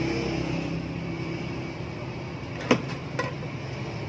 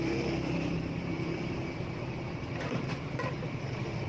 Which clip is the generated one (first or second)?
second